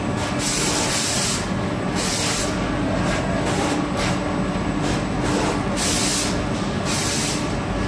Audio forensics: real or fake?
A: real